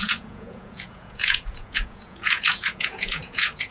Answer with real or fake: fake